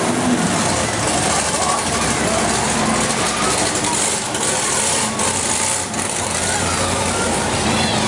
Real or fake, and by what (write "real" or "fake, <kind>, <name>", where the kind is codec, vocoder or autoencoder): real